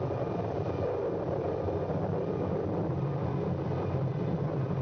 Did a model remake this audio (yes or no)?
no